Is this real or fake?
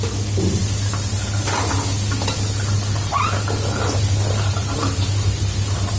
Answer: real